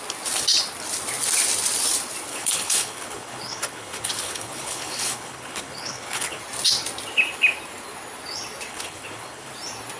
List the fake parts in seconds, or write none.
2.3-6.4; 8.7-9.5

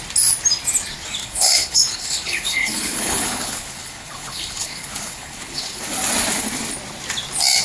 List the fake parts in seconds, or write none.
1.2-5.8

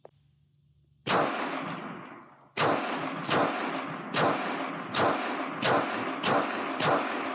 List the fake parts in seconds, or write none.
none

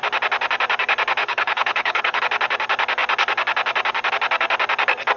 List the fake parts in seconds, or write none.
1.2-2.2